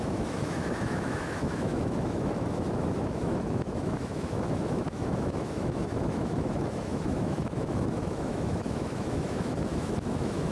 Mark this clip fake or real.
fake